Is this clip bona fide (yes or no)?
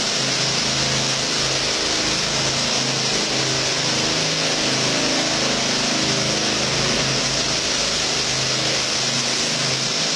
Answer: yes